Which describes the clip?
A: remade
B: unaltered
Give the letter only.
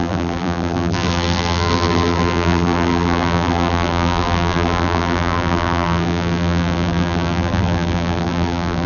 A